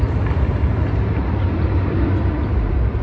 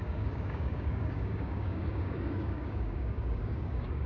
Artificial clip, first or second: second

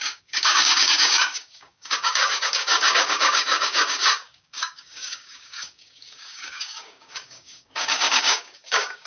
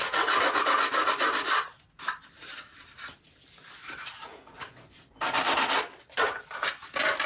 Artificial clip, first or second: first